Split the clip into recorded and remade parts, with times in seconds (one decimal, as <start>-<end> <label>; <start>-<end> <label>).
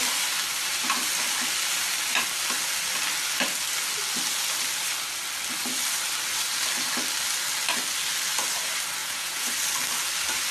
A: 0.0-9.0 recorded; 9.0-9.5 remade; 9.5-10.5 recorded